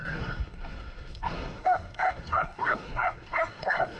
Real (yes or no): no